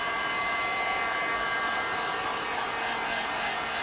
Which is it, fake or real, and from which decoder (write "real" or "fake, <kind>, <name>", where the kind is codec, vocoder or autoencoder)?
real